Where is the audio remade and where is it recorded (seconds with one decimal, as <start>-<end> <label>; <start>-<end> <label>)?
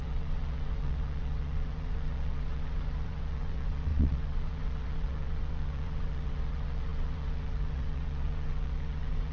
0.0-9.3 remade